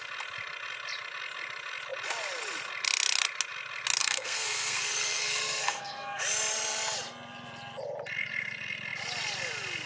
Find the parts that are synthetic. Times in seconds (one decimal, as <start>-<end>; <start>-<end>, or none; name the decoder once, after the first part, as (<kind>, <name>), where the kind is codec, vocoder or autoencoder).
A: 4.0-6.2 (codec, SNAC)

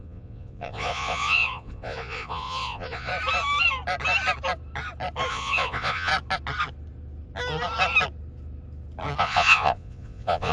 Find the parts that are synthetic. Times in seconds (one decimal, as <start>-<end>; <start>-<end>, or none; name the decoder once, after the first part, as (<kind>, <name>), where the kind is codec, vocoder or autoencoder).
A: 0.0-3.1 (vocoder, Vocos); 5.3-6.1; 9.2-10.5

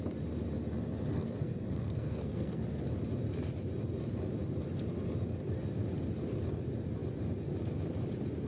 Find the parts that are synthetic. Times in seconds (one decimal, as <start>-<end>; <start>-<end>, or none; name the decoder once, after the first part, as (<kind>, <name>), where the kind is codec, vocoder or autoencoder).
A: 1.1-2.6 (codec, SNAC)

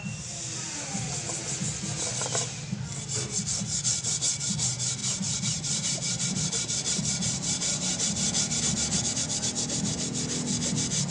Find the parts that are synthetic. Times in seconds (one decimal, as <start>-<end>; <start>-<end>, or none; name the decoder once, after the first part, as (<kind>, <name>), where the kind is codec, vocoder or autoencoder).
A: 5.0-8.6 (vocoder, BigVGAN v2)

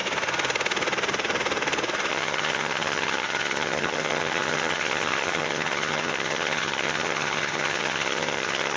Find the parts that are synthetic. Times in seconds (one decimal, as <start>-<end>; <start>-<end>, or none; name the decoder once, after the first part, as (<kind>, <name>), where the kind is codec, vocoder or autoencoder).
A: 2.1-8.8 (vocoder, HiFi-GAN)

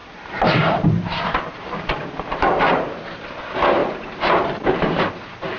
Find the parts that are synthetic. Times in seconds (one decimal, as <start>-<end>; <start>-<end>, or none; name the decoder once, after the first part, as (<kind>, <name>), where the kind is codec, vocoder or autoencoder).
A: 0.0-3.4 (vocoder, BigVGAN v2); 3.8-5.1

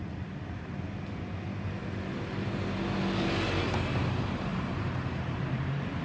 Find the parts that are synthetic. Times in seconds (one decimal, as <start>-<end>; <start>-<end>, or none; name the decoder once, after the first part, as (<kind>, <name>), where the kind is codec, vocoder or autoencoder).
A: 3.6-6.0 (vocoder, BigVGAN v2)

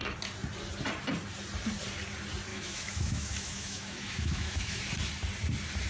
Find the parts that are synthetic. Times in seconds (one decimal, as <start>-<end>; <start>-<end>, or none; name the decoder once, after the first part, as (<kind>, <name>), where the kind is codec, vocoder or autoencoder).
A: 2.5-4.8 (autoencoder, DAC-VAE)